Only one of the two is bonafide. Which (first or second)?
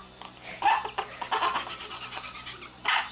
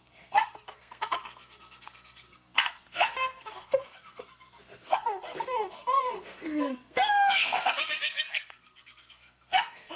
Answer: first